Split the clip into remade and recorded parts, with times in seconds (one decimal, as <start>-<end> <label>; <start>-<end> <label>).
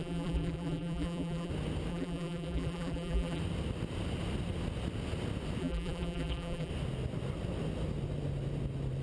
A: 0.0-1.5 remade; 1.5-1.9 recorded; 1.9-3.4 remade; 3.4-5.6 recorded; 5.6-6.7 remade; 6.7-9.0 recorded